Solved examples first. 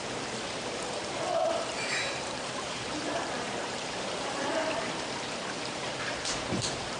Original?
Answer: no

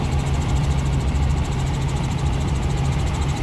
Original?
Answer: no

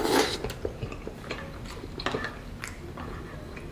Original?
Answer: yes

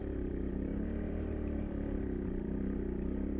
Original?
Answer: no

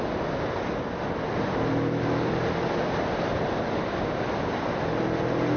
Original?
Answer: yes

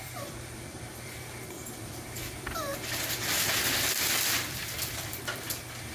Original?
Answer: no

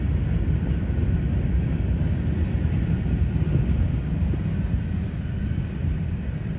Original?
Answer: no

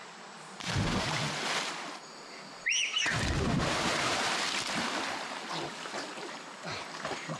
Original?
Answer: yes